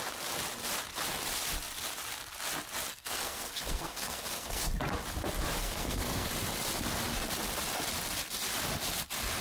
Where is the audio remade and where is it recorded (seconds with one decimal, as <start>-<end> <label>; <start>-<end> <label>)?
0.0-2.9 recorded; 2.9-4.7 remade; 4.7-5.6 recorded; 5.6-6.3 remade; 6.3-9.4 recorded